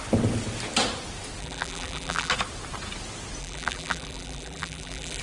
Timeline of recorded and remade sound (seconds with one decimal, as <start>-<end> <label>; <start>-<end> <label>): 0.0-1.4 recorded; 1.4-2.3 remade; 2.3-3.4 recorded; 3.4-5.2 remade